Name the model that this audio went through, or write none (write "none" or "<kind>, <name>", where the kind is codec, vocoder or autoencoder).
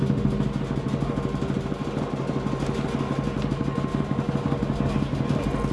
none